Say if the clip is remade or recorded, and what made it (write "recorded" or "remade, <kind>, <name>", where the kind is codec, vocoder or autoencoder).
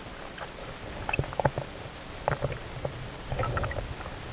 recorded